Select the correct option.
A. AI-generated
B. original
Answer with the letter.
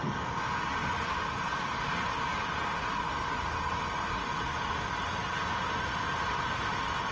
B